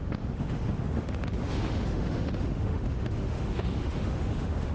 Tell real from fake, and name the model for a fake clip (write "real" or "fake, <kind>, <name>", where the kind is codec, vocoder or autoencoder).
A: fake, autoencoder, DAC-VAE